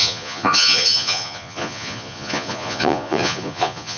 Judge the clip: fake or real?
fake